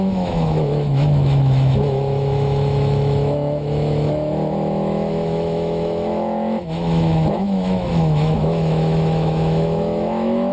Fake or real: fake